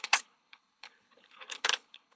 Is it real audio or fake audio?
fake